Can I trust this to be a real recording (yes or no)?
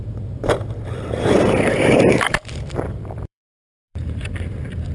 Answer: no